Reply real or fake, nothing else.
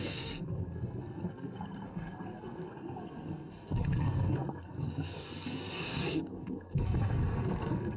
fake